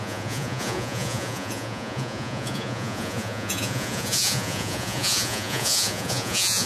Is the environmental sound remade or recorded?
remade